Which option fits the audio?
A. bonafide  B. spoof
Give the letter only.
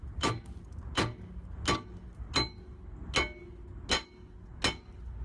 A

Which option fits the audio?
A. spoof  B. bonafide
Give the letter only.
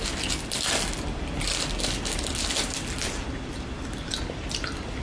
B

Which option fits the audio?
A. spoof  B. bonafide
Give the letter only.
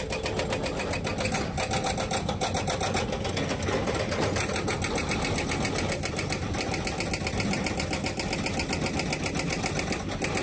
B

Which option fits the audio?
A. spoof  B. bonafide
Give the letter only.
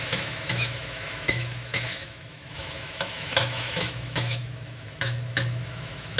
A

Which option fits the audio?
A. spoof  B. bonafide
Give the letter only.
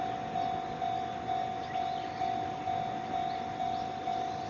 B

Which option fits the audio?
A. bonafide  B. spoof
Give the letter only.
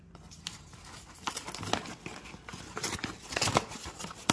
A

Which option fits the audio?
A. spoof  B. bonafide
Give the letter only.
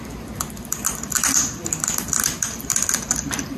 B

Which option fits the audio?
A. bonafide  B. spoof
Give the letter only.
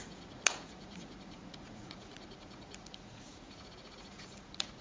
B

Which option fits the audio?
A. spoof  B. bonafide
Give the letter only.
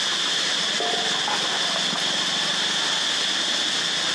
B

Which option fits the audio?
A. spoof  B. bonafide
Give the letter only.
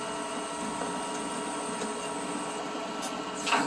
B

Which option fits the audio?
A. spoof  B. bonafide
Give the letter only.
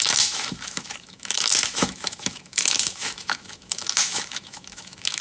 A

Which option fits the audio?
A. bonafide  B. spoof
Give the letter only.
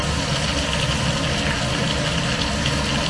A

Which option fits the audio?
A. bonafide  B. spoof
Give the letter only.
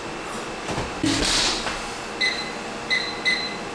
A